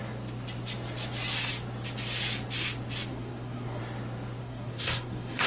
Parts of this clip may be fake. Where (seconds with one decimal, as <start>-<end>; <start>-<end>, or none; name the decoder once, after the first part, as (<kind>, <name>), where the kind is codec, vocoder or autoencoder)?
3.1-3.8 (codec, SNAC); 4.4-5.5